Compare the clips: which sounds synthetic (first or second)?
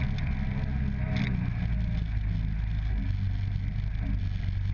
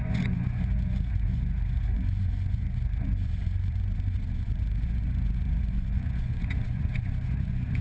second